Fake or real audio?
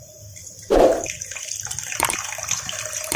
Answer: fake